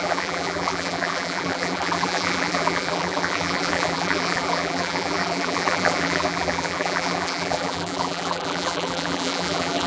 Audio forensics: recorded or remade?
remade